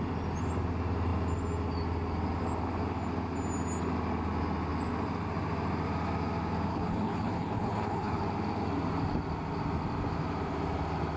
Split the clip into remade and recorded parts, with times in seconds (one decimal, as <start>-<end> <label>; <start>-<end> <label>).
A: 0.0-6.7 recorded; 6.7-8.2 remade; 8.2-11.2 recorded